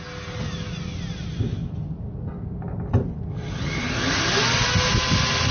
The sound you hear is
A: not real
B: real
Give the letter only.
B